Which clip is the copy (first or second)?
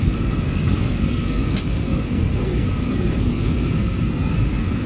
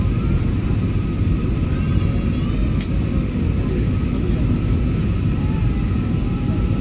first